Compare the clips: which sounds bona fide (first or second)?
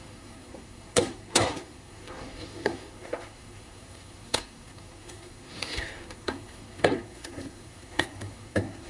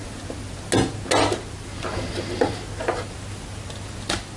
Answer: second